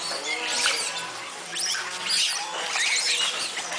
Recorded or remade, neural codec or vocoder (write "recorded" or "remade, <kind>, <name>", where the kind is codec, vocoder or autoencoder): recorded